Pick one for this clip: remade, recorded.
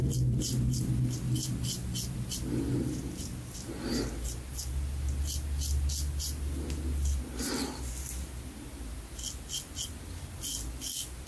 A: recorded